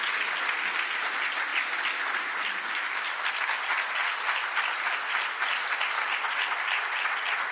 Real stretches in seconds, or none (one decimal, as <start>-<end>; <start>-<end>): 0.0-7.5